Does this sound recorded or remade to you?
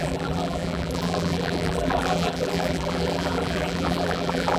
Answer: remade